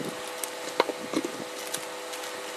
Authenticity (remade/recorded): recorded